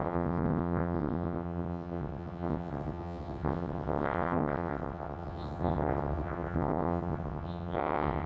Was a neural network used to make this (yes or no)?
yes